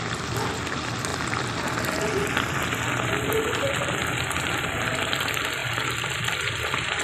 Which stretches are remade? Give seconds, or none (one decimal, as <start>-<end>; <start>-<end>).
0.0-1.1; 3.1-4.0; 5.0-5.6; 6.2-7.0